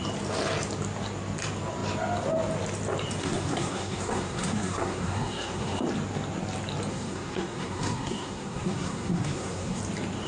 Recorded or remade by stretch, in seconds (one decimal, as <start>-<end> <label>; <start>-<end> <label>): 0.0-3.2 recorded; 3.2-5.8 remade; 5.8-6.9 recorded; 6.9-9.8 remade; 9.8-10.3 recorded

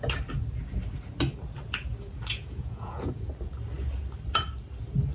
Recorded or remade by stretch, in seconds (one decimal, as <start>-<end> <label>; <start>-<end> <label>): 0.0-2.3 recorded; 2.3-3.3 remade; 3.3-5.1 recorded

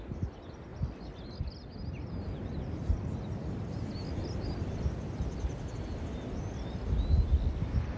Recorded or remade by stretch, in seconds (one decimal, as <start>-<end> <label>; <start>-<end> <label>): 0.0-8.0 recorded

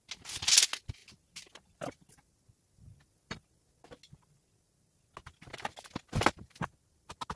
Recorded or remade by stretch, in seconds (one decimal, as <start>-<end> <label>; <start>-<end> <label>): 0.0-7.4 recorded

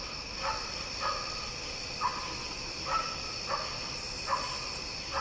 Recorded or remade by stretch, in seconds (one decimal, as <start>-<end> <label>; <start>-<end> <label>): 0.0-5.2 recorded

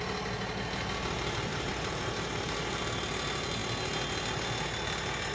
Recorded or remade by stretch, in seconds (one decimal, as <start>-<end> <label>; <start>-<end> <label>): 0.0-1.5 recorded; 1.5-2.8 remade; 2.8-5.3 recorded